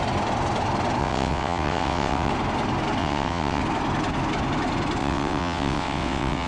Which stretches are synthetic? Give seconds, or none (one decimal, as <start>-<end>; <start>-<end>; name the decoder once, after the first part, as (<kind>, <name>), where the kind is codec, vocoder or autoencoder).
1.0-2.3 (vocoder, WaveNeXt); 3.0-3.6; 5.0-6.5